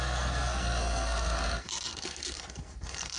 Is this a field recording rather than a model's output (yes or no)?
no